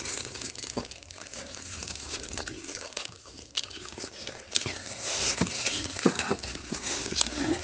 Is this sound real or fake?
fake